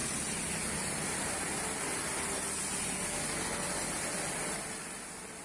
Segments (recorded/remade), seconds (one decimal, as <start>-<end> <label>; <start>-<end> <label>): 0.0-5.4 recorded